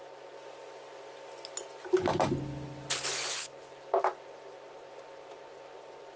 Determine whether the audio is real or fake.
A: real